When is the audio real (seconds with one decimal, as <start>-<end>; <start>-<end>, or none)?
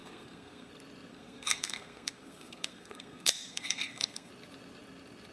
0.7-1.1; 4.3-5.3